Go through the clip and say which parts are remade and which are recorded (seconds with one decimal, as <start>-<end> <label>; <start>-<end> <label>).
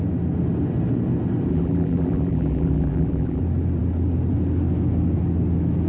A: 0.0-1.5 recorded; 1.5-3.4 remade; 3.4-5.9 recorded